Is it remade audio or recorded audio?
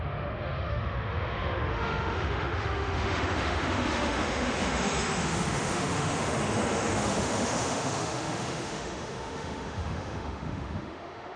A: remade